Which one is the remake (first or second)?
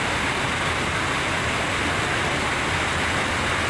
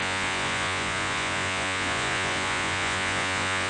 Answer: second